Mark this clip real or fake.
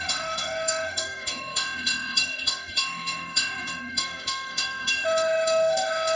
fake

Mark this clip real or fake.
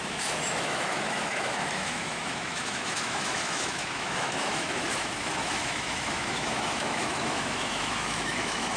fake